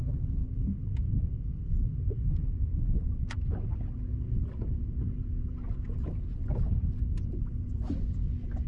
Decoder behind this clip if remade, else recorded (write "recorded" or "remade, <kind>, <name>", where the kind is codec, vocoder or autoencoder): recorded